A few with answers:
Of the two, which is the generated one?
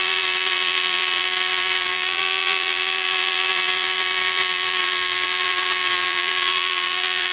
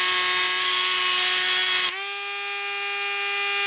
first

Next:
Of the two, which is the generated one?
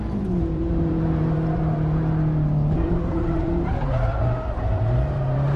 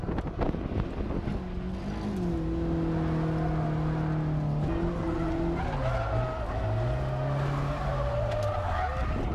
first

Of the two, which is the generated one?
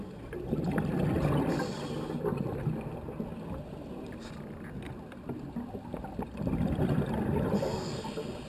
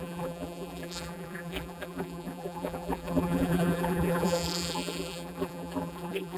second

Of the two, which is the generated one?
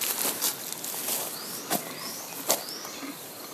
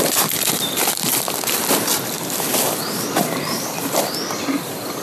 second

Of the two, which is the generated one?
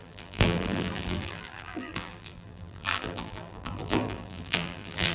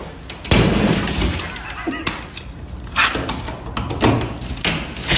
first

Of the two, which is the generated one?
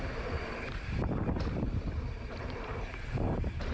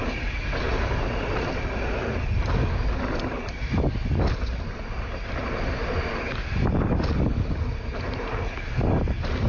first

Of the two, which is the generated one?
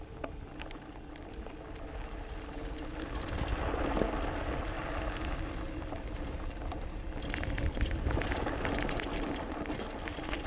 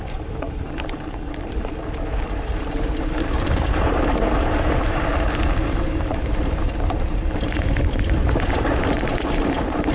second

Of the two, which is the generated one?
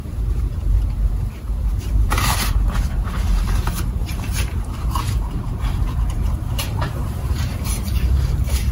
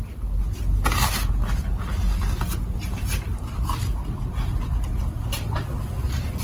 first